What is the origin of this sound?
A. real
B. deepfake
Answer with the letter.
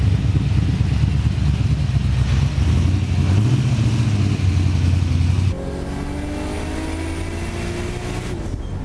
A